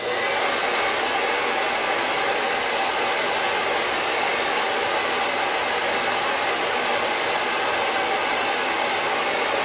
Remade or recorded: recorded